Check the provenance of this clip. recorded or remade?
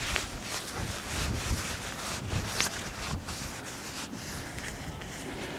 recorded